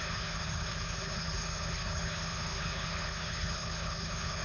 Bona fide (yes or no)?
no